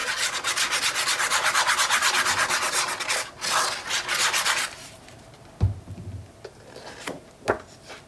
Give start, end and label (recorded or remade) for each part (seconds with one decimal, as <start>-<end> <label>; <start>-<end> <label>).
0.0-8.1 recorded